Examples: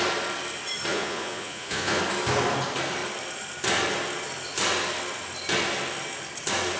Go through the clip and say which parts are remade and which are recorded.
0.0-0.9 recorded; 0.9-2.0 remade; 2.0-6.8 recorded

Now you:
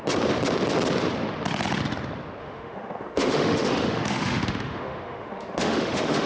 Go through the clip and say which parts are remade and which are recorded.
0.0-2.4 recorded; 2.4-6.3 remade

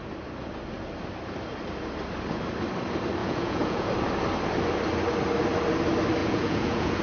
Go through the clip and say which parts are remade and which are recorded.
0.0-3.2 recorded; 3.2-3.9 remade; 3.9-6.2 recorded; 6.2-7.0 remade

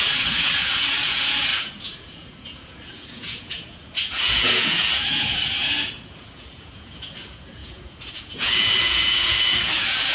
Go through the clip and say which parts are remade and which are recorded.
0.0-10.1 remade

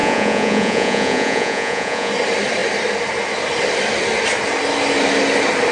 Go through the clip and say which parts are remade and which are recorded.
0.0-2.1 remade; 2.1-5.7 recorded